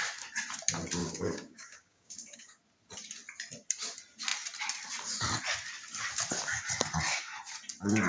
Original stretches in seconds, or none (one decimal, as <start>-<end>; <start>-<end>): 0.0-1.0; 2.6-8.1